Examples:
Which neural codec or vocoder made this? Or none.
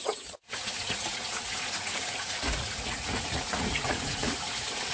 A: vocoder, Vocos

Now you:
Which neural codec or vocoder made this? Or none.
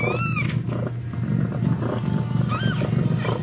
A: none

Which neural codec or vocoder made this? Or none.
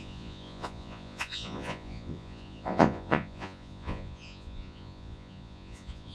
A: vocoder, Vocos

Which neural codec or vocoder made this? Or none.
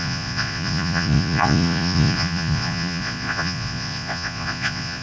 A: vocoder, Vocos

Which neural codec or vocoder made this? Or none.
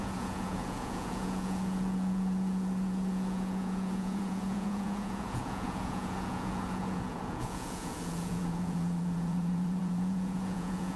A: vocoder, Vocos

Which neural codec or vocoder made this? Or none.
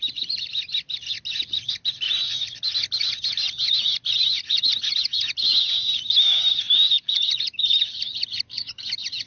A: none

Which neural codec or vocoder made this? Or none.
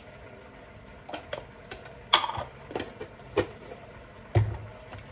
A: none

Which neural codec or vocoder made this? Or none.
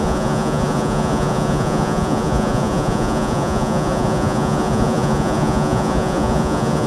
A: vocoder, Vocos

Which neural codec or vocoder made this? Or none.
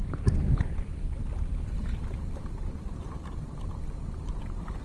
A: none